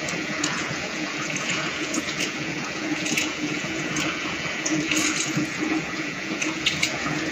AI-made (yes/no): yes